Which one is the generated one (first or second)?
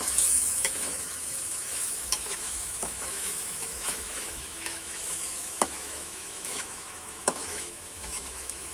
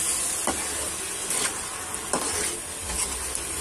first